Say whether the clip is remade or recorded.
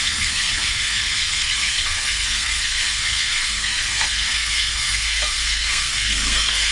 remade